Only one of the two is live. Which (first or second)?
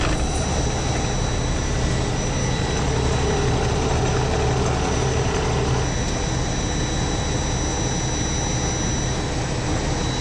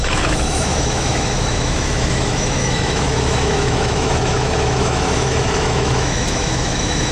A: first